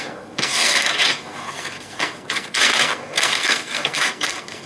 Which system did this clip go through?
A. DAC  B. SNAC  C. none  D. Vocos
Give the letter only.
B